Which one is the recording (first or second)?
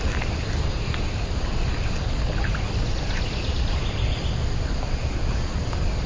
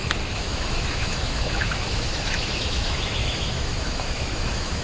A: first